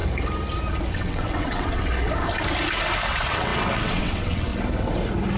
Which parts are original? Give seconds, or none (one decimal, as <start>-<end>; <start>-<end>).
0.0-0.9; 1.9-3.1; 4.5-5.4